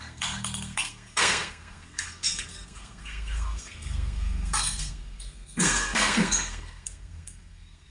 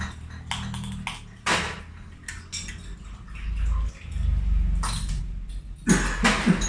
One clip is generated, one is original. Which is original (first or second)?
second